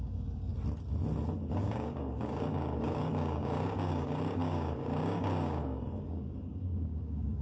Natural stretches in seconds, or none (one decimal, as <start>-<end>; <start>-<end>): 0.5-1.5